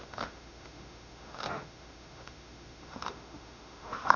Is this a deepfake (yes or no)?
yes